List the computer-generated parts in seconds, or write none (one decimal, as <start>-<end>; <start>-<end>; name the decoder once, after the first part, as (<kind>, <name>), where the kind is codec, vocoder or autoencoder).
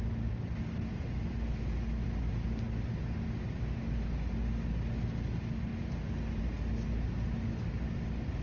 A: none